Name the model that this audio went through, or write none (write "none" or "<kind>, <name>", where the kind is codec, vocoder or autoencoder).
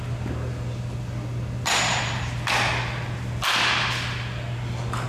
none